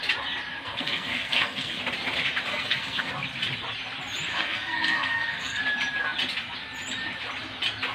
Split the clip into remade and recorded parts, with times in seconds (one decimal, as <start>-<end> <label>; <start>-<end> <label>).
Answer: 0.0-0.5 recorded; 0.5-1.8 remade; 1.8-2.5 recorded; 2.5-3.1 remade; 3.1-4.3 recorded; 4.3-5.6 remade; 5.6-7.9 recorded